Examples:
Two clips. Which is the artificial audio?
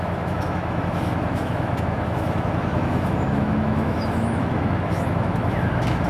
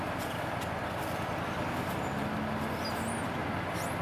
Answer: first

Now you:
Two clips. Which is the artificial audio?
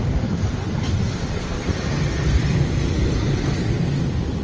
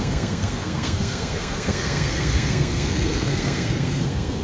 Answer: second